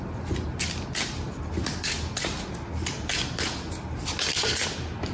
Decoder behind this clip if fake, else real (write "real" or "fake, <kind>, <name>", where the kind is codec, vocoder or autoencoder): real